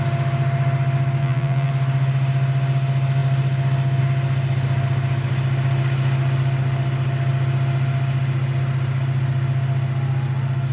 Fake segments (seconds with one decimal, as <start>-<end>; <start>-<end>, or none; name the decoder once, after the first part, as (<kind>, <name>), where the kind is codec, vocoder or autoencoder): 1.2-1.7 (vocoder, BigVGAN v2)